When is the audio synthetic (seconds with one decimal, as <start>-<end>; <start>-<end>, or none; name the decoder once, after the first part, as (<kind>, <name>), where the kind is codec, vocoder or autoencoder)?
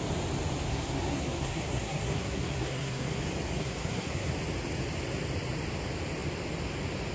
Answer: 0.7-3.2 (codec, SNAC); 3.6-4.3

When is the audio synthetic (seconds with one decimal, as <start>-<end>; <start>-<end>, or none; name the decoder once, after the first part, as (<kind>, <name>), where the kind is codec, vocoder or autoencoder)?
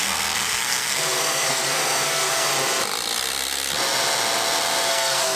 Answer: 0.0-2.5 (codec, SNAC); 4.9-5.4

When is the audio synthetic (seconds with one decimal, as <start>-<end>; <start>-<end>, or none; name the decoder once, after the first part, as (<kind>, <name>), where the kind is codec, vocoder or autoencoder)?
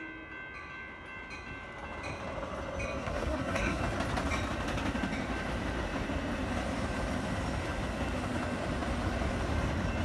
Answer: 3.0-3.8 (codec, SNAC)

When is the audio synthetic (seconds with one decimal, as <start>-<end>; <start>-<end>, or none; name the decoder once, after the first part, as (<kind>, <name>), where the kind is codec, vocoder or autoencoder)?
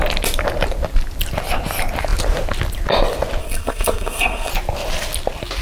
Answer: 3.4-4.5 (codec, SNAC)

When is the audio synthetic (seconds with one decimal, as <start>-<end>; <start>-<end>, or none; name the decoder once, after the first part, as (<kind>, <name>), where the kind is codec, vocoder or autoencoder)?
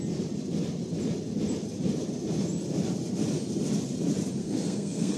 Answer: 4.4-5.2 (codec, SNAC)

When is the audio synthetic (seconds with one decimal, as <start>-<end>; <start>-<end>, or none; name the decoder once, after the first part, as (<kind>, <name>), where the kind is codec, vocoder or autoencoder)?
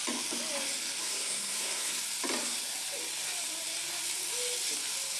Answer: 1.0-2.0 (codec, SNAC)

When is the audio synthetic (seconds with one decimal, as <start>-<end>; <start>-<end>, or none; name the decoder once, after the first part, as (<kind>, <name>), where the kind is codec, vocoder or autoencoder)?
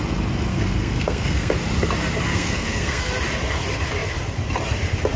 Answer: 0.5-1.5 (codec, SNAC); 2.3-3.1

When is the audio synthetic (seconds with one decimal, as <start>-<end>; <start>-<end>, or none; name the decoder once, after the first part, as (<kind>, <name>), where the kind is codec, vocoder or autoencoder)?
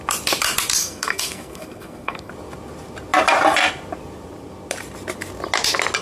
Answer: 0.8-2.3 (codec, SNAC)